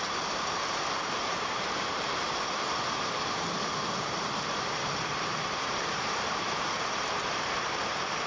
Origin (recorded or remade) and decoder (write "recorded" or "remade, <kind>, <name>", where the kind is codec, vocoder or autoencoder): remade, vocoder, BigVGAN v2